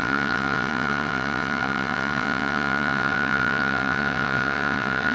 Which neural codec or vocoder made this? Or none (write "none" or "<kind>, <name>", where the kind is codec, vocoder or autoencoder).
vocoder, WaveNeXt